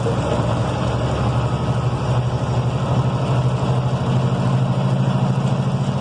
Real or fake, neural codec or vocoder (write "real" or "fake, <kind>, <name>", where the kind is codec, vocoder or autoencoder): real